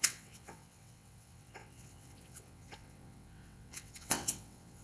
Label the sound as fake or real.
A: fake